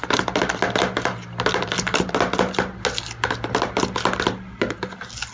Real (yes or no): yes